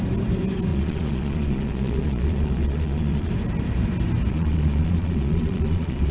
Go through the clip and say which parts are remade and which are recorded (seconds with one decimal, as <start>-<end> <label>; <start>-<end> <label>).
0.0-0.7 recorded; 0.7-3.3 remade; 3.3-4.3 recorded; 4.3-6.1 remade